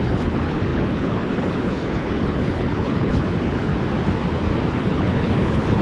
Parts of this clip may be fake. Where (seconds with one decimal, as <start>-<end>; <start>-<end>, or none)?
0.0-3.7; 4.7-5.8

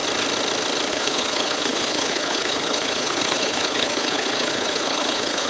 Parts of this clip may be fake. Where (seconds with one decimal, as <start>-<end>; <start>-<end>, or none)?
0.9-5.5

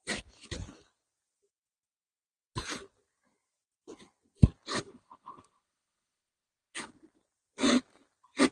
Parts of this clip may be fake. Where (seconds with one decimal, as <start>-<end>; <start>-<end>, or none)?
4.7-6.9

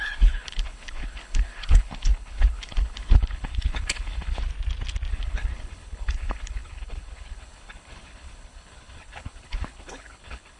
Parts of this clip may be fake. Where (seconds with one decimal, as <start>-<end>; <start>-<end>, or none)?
0.0-4.5; 5.1-10.6

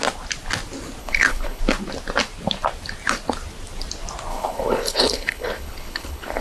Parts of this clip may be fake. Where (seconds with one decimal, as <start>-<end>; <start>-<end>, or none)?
1.0-1.6; 4.3-6.4

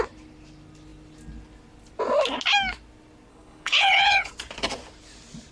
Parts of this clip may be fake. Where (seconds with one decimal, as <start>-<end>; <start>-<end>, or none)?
3.3-4.3